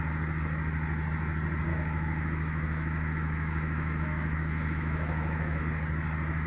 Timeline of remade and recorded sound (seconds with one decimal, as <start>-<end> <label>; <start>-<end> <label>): 0.0-1.7 recorded; 1.7-5.6 remade; 5.6-6.5 recorded